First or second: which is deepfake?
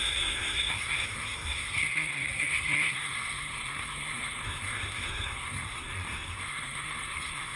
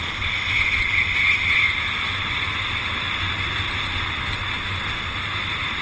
first